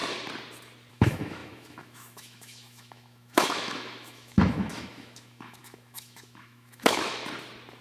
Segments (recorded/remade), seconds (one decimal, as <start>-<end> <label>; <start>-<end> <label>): 0.0-0.9 recorded; 0.9-7.2 remade; 7.2-7.8 recorded

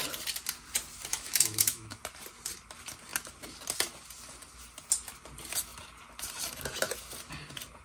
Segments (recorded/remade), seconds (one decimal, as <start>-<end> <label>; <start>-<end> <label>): 0.0-1.1 recorded; 1.1-2.0 remade; 2.0-7.8 recorded

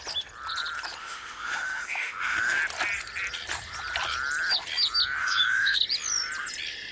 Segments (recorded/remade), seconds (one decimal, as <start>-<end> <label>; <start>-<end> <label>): 0.0-1.0 recorded; 1.0-2.6 remade; 2.6-5.2 recorded; 5.2-5.8 remade; 5.8-6.9 recorded